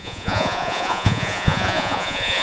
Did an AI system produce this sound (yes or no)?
yes